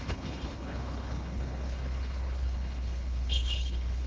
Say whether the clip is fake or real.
fake